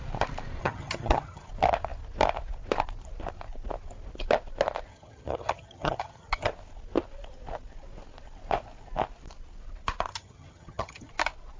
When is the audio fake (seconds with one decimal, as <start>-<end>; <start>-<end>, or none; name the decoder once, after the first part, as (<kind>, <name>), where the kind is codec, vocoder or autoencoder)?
0.6-1.5 (vocoder, HiFi-GAN); 4.9-6.5; 10.1-11.1